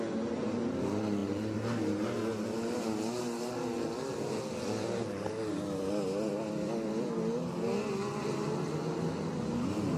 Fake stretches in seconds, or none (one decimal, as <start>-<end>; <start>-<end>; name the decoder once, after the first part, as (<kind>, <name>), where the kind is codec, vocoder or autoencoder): none